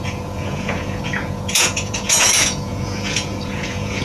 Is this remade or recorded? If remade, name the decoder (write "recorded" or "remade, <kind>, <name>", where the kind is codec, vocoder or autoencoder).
remade, vocoder, Vocos